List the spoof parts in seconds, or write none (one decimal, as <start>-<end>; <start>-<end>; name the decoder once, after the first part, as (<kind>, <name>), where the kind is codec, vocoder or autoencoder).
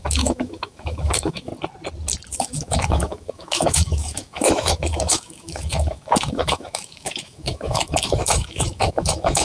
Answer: 0.0-1.5 (autoencoder, DAC-VAE); 2.3-9.4